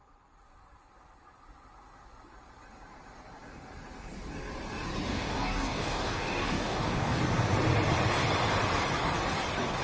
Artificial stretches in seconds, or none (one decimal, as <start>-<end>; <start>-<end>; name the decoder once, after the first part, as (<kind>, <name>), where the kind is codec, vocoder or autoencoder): 5.1-7.2 (codec, DAC)